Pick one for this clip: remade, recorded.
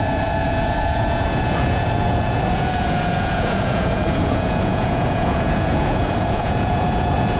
remade